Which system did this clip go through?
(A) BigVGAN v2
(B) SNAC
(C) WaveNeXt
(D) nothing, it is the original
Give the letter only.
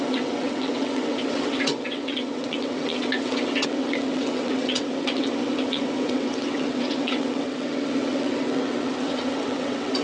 C